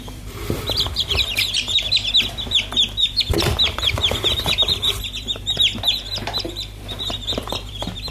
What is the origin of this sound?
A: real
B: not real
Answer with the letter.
B